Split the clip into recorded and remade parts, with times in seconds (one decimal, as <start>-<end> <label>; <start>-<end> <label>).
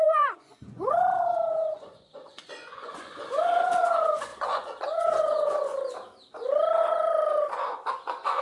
0.0-5.7 remade; 5.7-6.8 recorded; 6.8-8.4 remade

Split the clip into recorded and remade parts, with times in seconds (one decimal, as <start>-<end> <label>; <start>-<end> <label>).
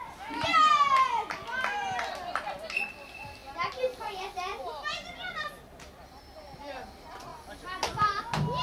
0.0-8.6 recorded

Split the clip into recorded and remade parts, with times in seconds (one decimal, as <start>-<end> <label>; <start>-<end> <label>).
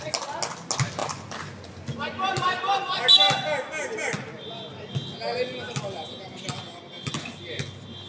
0.0-8.1 recorded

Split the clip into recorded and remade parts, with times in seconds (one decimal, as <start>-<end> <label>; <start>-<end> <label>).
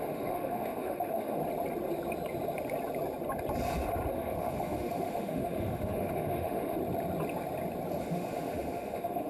0.0-1.4 remade; 1.4-4.1 recorded; 4.1-6.8 remade; 6.8-8.0 recorded; 8.0-9.3 remade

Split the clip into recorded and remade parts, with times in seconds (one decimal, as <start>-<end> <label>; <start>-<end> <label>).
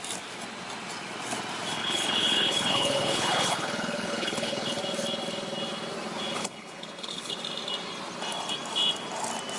0.0-1.8 recorded; 1.8-4.8 remade; 4.8-6.4 recorded; 6.4-7.4 remade; 7.4-9.6 recorded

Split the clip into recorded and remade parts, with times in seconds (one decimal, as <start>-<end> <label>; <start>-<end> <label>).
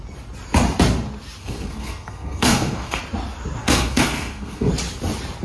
0.0-1.4 recorded; 1.4-3.0 remade; 3.0-3.6 recorded; 3.6-4.7 remade; 4.7-5.4 recorded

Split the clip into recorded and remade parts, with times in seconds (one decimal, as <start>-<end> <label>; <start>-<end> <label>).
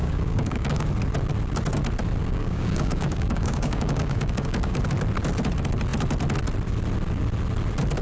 0.0-0.9 remade; 0.9-2.2 recorded; 2.2-4.8 remade; 4.8-8.0 recorded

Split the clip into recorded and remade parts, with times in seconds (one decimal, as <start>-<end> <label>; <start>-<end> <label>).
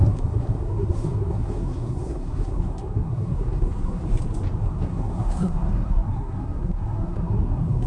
0.0-4.0 remade; 4.0-4.6 recorded; 4.6-7.9 remade